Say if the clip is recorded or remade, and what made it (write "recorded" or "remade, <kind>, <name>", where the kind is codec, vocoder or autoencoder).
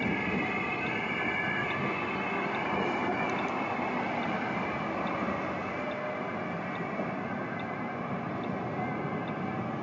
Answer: recorded